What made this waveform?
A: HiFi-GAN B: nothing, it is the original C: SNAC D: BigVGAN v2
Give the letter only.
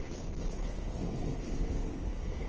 C